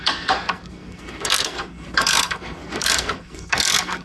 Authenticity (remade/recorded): remade